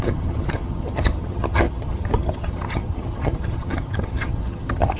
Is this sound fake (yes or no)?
yes